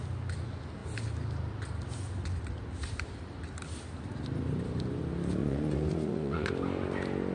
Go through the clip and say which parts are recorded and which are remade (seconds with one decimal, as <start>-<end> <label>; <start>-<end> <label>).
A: 0.0-5.4 recorded; 5.4-6.5 remade; 6.5-7.3 recorded